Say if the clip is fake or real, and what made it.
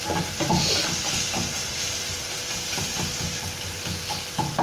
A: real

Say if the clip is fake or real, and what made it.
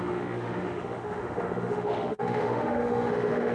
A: fake, autoencoder, DAC-VAE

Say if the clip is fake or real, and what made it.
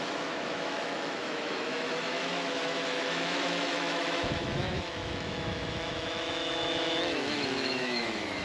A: fake, autoencoder, DAC-VAE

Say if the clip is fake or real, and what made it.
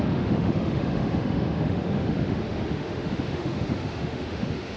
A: fake, autoencoder, DAC-VAE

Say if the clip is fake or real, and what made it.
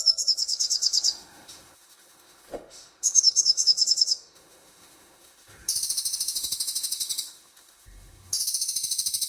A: fake, autoencoder, DAC-VAE